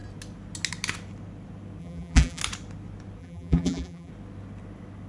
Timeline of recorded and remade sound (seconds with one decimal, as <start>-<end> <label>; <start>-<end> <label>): 0.0-1.8 recorded; 1.8-2.4 remade; 2.4-3.2 recorded; 3.2-4.1 remade; 4.1-5.1 recorded